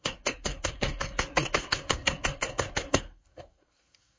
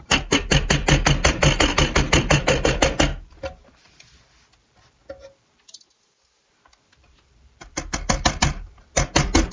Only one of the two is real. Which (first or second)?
second